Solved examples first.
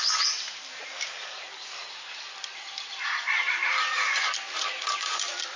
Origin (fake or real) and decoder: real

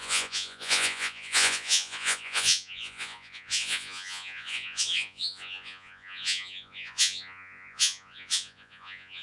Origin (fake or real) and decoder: fake, vocoder, Vocos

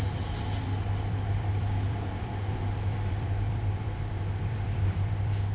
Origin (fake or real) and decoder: fake, vocoder, BigVGAN v2